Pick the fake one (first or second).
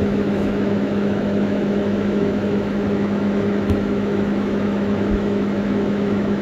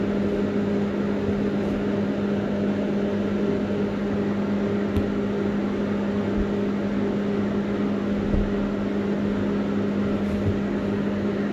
first